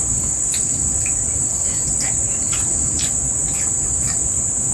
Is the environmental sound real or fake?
real